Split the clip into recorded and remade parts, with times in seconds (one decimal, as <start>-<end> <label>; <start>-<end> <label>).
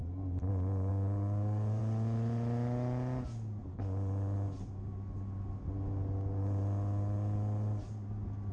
0.0-0.9 recorded; 0.9-1.8 remade; 1.8-8.5 recorded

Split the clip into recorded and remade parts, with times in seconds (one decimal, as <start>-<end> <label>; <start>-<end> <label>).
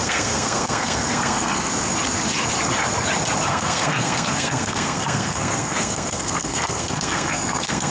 0.0-1.7 remade; 1.7-3.5 recorded; 3.5-7.9 remade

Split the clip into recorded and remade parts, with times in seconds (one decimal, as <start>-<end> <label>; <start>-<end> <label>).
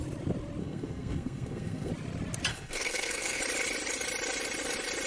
0.0-0.6 recorded; 0.6-1.9 remade; 1.9-2.5 recorded; 2.5-3.4 remade; 3.4-5.1 recorded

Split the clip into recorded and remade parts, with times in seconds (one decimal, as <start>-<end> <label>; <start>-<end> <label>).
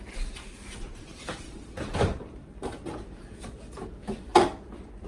0.0-4.3 remade; 4.3-5.1 recorded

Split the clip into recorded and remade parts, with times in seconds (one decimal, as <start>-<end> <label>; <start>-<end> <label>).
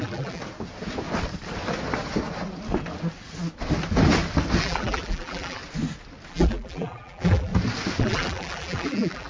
0.0-0.4 remade; 0.4-4.6 recorded; 4.6-5.6 remade; 5.6-6.3 recorded; 6.3-7.5 remade; 7.5-8.0 recorded; 8.0-9.3 remade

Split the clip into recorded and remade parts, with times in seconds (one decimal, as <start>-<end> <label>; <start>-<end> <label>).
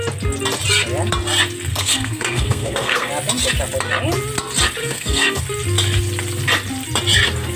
0.0-1.7 recorded; 1.7-3.1 remade; 3.1-4.8 recorded; 4.8-5.4 remade; 5.4-7.6 recorded